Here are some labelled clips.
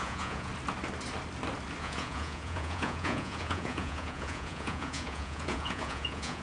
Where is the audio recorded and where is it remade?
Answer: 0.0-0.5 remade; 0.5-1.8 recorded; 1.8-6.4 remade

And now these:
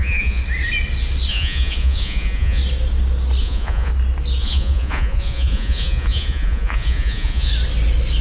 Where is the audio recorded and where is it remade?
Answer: 0.0-0.4 remade; 0.4-1.3 recorded; 1.3-2.6 remade; 2.6-3.4 recorded; 3.4-3.9 remade; 3.9-4.4 recorded; 4.4-7.5 remade; 7.5-8.2 recorded

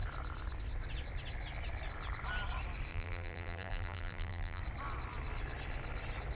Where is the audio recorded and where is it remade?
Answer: 0.0-2.9 recorded; 2.9-4.6 remade; 4.6-6.3 recorded